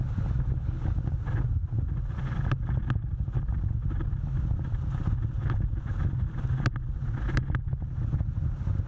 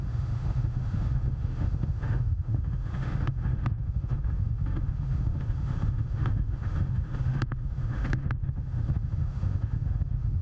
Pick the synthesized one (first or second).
second